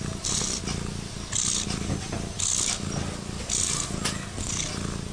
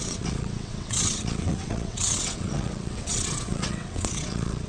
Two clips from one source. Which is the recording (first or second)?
first